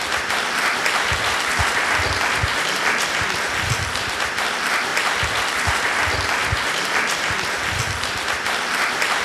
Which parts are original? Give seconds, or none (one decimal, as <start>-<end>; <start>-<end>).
0.0-9.2